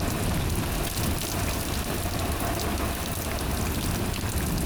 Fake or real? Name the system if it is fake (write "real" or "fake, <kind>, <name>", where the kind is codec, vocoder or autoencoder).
real